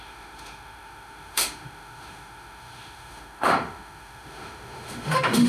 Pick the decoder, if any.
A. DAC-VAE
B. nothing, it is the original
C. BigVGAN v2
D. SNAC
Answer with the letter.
A